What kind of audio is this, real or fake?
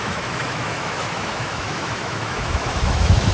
fake